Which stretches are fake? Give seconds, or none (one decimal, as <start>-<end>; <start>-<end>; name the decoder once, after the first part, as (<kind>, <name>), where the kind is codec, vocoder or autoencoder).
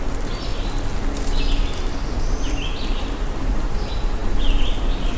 none